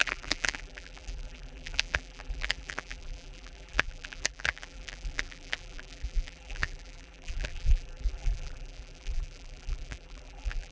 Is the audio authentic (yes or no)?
no